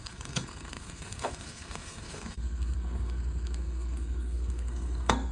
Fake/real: fake